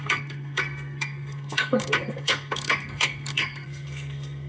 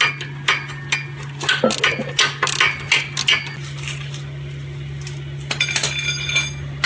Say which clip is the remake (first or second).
first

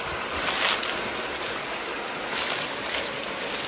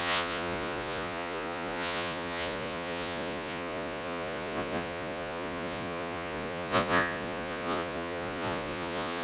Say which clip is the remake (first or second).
second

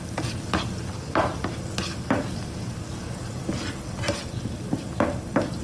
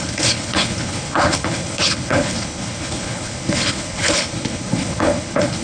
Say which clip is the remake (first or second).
second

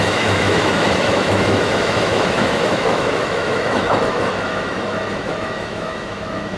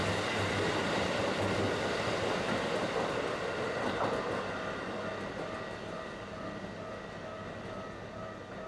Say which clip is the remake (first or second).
first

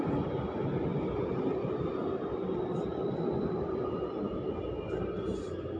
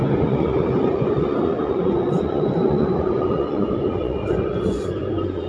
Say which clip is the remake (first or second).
second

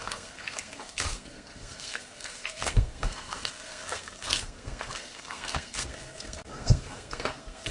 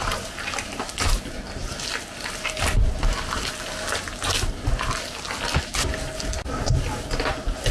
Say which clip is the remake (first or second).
first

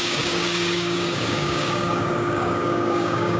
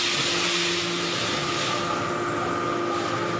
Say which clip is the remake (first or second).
first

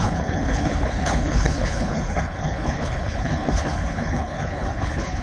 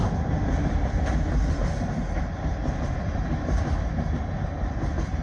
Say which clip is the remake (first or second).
first